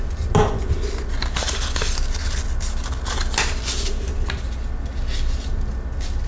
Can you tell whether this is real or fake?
real